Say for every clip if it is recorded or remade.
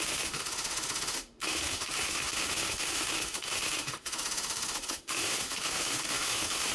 remade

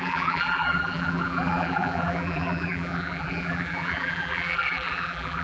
remade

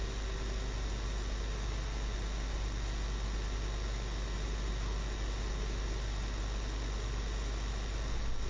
recorded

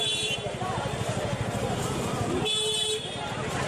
remade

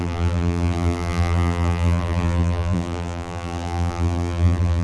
remade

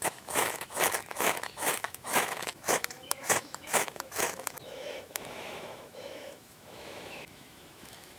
remade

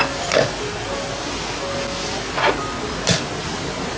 recorded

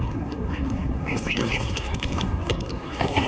remade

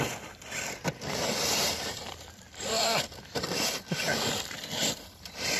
remade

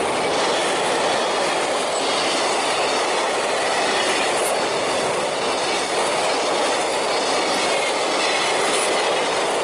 recorded